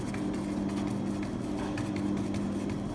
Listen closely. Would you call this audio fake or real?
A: real